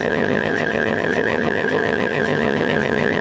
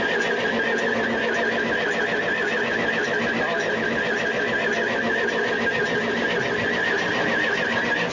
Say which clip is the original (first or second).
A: second